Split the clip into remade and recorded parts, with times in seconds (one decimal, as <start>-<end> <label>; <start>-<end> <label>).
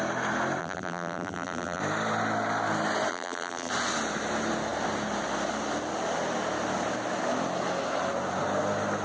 0.0-0.6 recorded; 0.6-1.8 remade; 1.8-3.1 recorded; 3.1-3.7 remade; 3.7-9.0 recorded